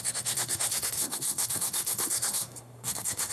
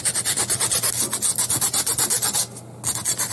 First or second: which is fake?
first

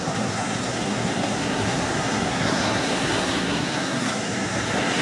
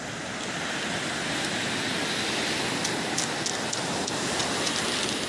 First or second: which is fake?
first